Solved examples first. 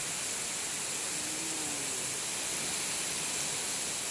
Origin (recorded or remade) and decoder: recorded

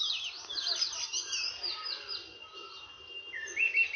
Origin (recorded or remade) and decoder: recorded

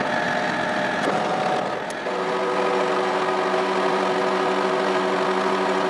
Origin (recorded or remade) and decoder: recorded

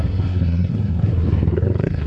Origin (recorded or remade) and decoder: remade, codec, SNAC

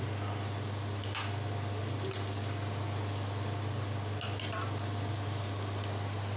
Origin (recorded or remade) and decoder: recorded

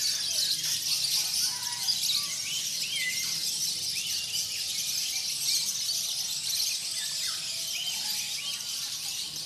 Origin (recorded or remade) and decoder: recorded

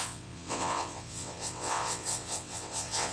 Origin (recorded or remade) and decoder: remade, vocoder, WaveNeXt